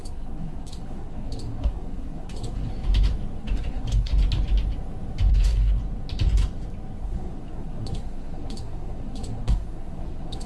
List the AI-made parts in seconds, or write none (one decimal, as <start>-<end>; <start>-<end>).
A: 0.0-2.7; 3.4-4.1; 5.3-5.8; 7.0-10.5